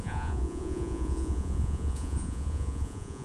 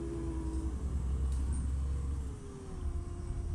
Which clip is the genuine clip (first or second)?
second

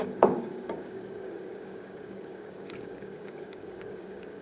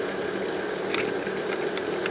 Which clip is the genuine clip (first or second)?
second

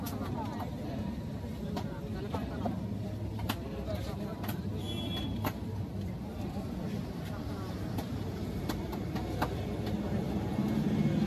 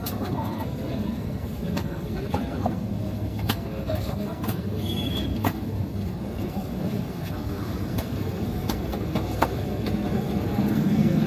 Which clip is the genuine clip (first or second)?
first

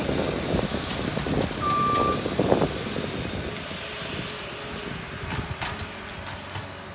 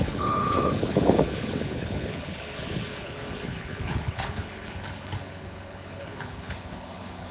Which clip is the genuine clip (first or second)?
first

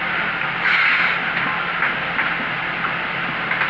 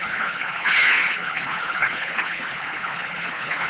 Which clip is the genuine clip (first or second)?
first